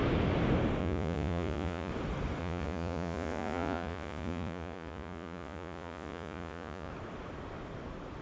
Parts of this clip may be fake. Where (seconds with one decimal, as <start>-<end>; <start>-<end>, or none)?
0.8-1.9; 2.4-6.9